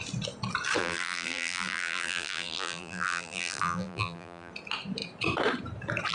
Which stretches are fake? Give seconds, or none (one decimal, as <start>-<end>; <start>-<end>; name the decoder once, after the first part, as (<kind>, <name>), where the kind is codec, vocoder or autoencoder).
0.8-4.5 (vocoder, BigVGAN v2)